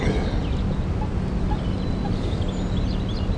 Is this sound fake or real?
real